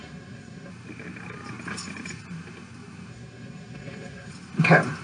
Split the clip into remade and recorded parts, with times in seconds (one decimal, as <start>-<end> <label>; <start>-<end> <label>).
0.0-0.7 remade; 0.7-3.1 recorded; 3.1-4.3 remade; 4.3-5.0 recorded